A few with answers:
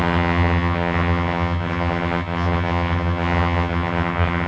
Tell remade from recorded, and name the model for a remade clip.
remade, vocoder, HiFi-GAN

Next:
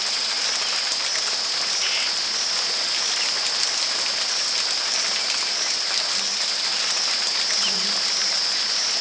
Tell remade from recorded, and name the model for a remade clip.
recorded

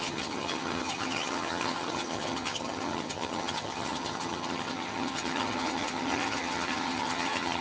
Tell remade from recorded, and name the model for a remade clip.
remade, vocoder, HiFi-GAN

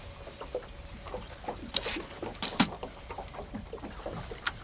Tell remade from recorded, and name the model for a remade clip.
recorded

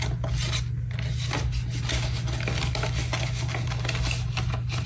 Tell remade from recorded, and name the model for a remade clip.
recorded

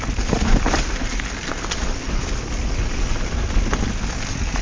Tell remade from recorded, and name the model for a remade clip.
recorded